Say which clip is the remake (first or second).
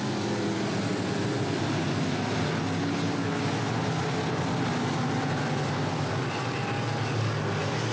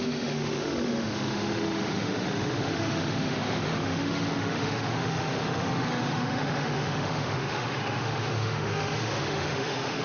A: second